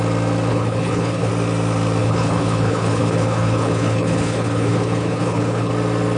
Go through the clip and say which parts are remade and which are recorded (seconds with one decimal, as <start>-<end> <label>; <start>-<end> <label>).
0.0-0.5 recorded; 0.5-1.3 remade; 1.3-2.0 recorded; 2.0-5.7 remade; 5.7-6.2 recorded